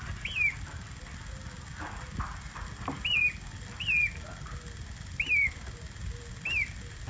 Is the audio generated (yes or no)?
no